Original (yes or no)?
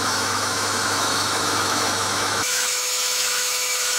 no